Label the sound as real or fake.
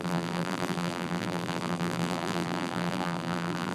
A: fake